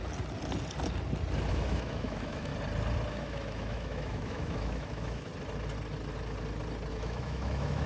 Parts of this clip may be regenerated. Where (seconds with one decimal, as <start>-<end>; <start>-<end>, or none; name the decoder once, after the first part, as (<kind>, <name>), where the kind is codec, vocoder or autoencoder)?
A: 1.5-2.5 (autoencoder, DAC-VAE); 3.1-5.3; 6.9-7.9